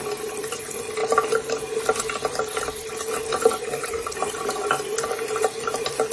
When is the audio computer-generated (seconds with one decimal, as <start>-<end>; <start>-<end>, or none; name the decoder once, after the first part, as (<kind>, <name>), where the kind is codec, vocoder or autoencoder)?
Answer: none